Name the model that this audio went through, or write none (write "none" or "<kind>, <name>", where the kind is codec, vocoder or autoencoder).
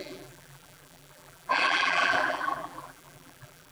vocoder, BigVGAN v2